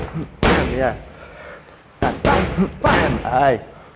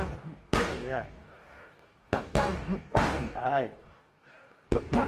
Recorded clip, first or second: first